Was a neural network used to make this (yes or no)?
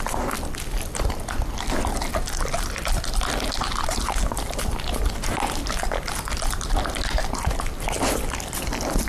no